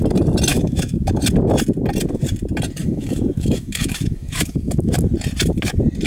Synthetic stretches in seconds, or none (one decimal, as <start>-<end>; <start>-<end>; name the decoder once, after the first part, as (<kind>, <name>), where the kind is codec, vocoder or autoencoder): 0.5-1.2 (autoencoder, DAC-VAE); 2.8-4.9